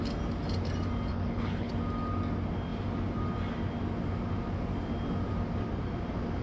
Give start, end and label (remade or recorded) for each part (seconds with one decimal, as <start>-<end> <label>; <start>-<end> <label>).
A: 0.0-1.1 recorded; 1.1-1.7 remade; 1.7-6.4 recorded